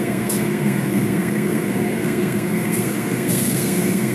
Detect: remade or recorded remade